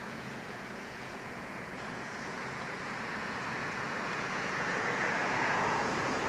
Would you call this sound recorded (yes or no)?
no